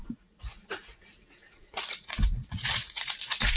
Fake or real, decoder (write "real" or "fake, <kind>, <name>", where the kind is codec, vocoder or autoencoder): fake, vocoder, Vocos